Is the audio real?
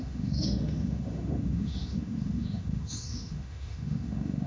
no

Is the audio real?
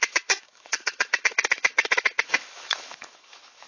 no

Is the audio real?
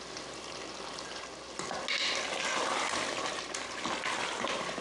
yes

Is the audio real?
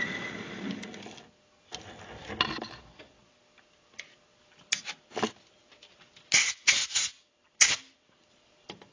yes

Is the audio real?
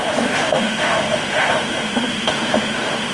no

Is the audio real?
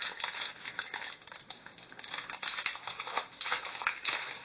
no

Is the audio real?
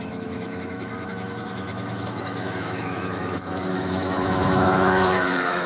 no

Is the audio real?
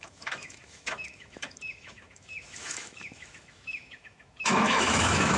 no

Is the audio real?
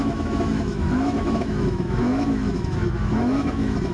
no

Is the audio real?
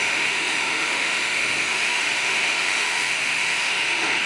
no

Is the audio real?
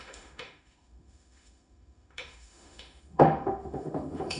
no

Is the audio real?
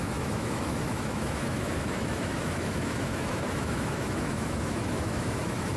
no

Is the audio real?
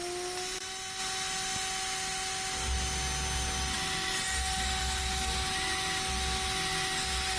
yes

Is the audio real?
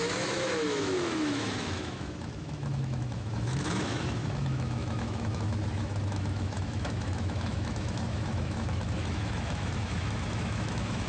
no